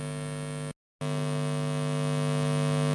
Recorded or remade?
recorded